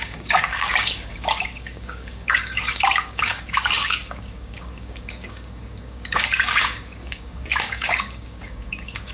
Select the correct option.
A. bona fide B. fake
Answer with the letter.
B